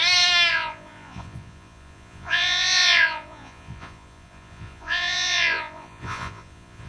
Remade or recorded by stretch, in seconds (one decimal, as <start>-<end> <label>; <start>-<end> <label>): 0.0-0.5 recorded; 0.5-6.9 remade